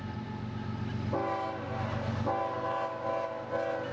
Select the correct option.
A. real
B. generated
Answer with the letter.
A